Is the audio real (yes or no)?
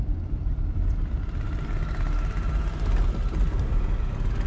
yes